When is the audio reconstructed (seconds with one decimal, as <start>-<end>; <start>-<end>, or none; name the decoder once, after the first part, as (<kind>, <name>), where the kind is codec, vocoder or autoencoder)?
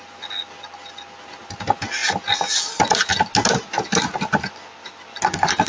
none